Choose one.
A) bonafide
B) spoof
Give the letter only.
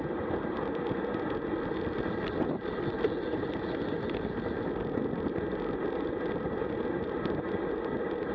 A